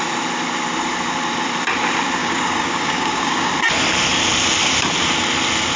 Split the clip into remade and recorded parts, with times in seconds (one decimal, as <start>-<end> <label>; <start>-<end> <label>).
0.0-2.2 recorded; 2.2-3.5 remade; 3.5-5.8 recorded